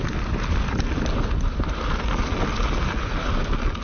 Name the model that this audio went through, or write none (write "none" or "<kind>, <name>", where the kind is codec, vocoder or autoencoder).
none